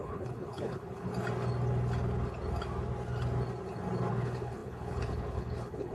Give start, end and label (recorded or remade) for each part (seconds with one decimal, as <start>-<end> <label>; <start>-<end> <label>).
0.0-1.1 remade; 1.1-4.1 recorded; 4.1-5.9 remade